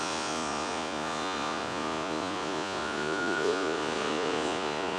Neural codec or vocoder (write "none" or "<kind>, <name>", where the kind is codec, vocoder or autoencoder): vocoder, Vocos